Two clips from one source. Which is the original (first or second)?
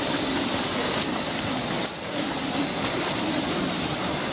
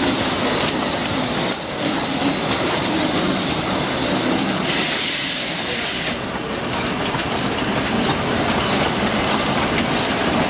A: second